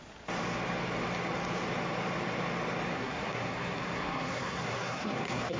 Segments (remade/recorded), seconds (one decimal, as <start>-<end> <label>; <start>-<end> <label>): 0.0-2.9 recorded; 2.9-5.6 remade